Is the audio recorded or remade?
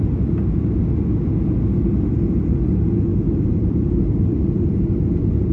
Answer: recorded